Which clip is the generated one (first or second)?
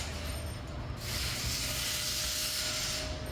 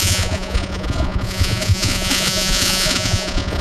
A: second